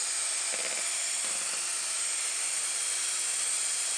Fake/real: real